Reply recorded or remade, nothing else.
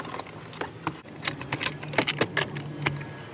recorded